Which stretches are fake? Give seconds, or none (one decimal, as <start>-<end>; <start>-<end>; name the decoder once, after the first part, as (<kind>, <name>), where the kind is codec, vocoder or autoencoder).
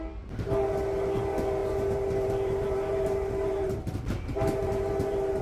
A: 1.6-3.8 (vocoder, BigVGAN v2); 4.6-5.4